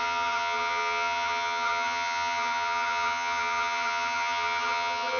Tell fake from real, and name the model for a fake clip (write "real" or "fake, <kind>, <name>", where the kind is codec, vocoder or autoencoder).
fake, vocoder, HiFi-GAN